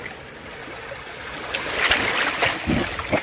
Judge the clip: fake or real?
real